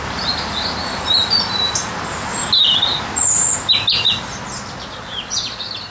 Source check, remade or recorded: recorded